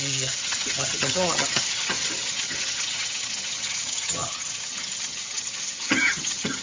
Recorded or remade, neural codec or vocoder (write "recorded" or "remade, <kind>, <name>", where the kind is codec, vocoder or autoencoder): remade, vocoder, HiFi-GAN